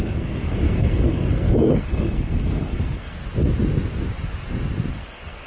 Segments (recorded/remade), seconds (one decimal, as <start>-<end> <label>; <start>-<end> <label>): 0.0-3.2 remade; 3.2-4.9 recorded; 4.9-5.5 remade